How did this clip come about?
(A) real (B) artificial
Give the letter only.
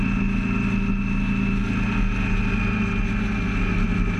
A